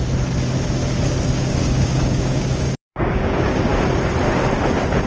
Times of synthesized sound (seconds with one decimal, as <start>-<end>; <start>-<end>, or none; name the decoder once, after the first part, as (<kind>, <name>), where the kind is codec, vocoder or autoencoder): 1.3-3.7 (codec, DAC)